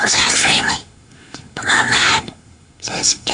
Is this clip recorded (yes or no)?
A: no